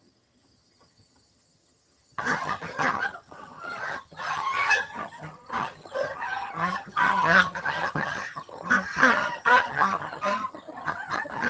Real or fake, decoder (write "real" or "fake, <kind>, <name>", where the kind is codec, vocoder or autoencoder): fake, vocoder, HiFi-GAN